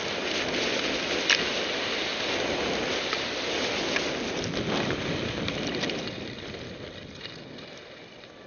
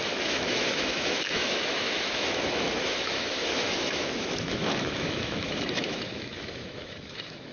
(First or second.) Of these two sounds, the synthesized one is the second